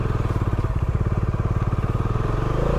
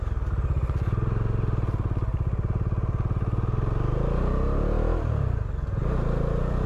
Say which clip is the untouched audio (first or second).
second